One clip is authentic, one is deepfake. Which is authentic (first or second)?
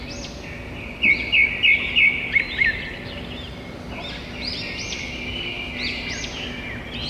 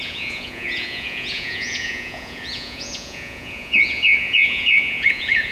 first